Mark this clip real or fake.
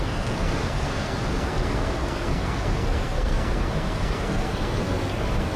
fake